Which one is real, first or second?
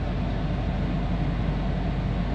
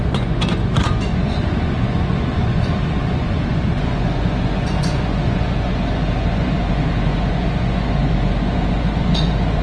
first